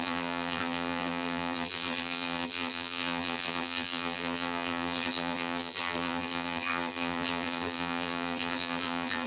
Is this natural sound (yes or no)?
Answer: no